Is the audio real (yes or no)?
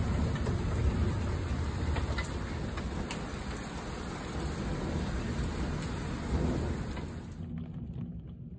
yes